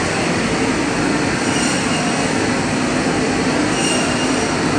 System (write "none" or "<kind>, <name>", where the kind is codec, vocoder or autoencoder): none